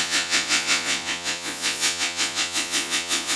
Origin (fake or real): fake